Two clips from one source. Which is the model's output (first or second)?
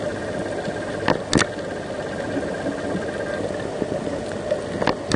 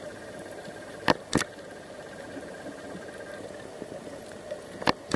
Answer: second